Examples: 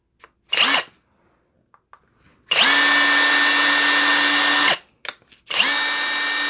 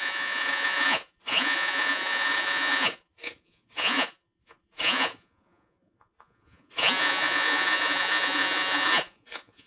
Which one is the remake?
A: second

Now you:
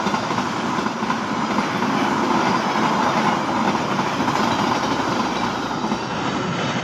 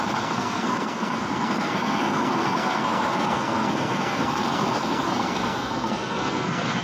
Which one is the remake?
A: second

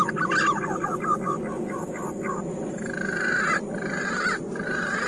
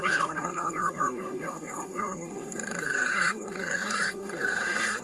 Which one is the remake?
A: second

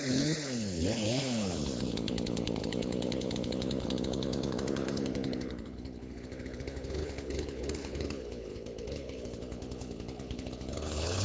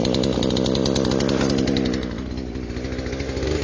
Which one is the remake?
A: first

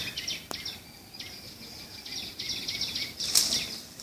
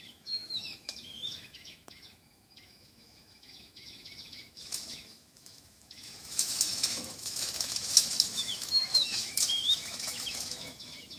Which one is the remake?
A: second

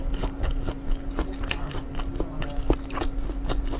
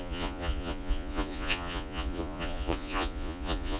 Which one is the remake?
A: second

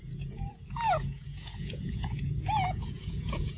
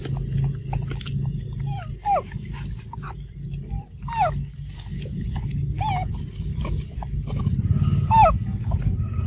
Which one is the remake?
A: first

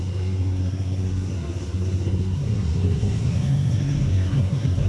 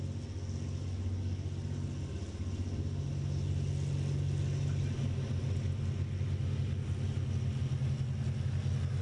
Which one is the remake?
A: first